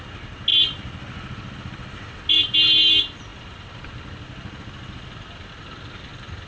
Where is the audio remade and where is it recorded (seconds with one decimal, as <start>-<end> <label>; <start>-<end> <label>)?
0.0-6.5 recorded